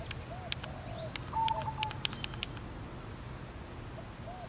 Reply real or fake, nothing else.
real